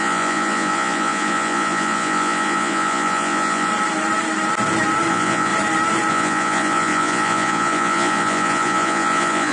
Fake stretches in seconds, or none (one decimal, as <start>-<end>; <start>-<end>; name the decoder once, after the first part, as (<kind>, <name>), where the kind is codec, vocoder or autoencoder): 0.0-3.7 (vocoder, Vocos); 5.1-5.5; 6.1-9.5